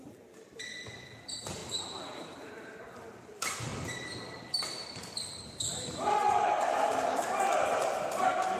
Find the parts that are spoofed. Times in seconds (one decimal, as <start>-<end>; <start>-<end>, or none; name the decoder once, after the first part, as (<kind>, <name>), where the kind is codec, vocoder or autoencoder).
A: none